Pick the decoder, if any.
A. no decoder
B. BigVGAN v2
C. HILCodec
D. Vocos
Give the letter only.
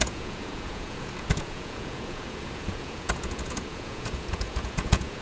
D